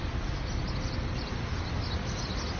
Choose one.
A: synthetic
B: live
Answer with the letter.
B